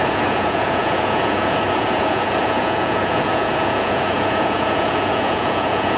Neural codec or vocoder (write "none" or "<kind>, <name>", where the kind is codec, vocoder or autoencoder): vocoder, Vocos